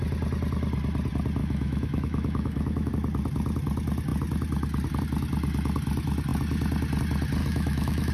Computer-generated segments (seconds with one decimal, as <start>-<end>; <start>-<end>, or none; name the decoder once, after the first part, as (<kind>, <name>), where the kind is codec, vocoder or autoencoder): 1.4-2.9 (autoencoder, DAC-VAE); 7.4-8.1